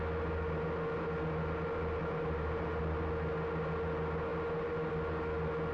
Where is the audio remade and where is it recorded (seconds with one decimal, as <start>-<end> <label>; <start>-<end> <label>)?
0.0-2.0 recorded; 2.0-2.8 remade; 2.8-5.7 recorded